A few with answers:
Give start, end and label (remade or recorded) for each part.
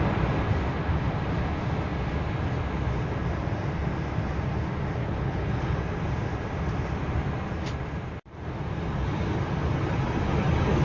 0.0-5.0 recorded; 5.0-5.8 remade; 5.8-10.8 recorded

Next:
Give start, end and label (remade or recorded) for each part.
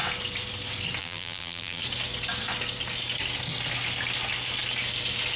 0.0-1.0 recorded; 1.0-1.8 remade; 1.8-5.4 recorded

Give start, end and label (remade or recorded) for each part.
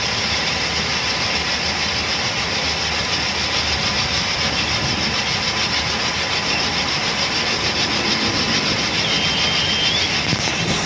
0.0-10.9 recorded